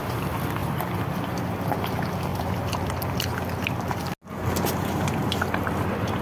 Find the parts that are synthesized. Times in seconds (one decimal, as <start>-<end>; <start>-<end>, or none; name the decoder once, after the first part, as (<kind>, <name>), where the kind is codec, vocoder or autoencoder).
5.2-5.7 (vocoder, BigVGAN v2)